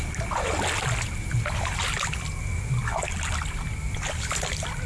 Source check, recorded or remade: recorded